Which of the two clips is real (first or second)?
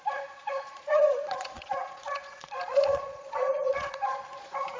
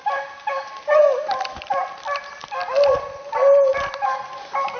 second